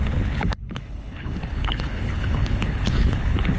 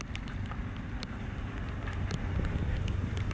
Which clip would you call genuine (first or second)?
second